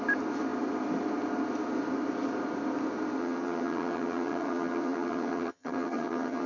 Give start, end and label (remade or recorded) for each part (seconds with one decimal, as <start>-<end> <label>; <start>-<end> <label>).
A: 0.0-3.2 recorded; 3.2-6.5 remade